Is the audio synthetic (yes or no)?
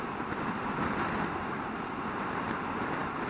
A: no